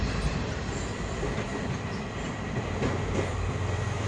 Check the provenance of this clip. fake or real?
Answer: real